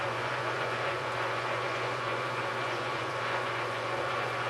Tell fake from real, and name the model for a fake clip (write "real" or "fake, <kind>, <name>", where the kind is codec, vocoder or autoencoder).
fake, vocoder, Vocos